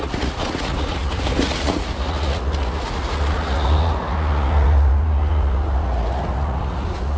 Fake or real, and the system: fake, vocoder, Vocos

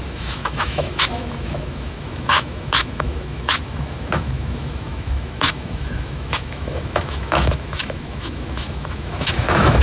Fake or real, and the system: fake, autoencoder, DAC-VAE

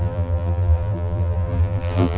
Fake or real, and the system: fake, vocoder, BigVGAN v2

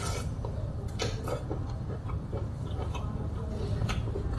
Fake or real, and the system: real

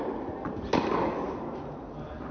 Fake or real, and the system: real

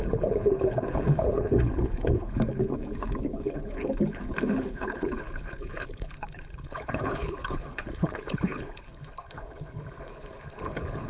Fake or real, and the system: fake, codec, HILCodec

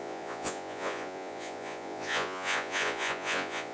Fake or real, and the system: fake, vocoder, Vocos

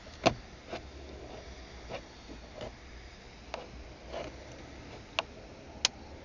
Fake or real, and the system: real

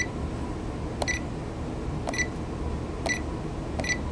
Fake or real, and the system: real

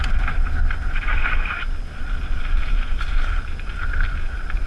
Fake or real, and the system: real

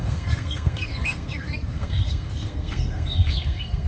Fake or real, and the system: fake, codec, SNAC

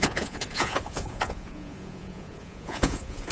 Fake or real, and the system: fake, vocoder, Vocos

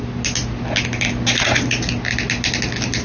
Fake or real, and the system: real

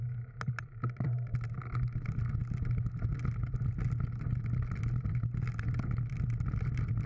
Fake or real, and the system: real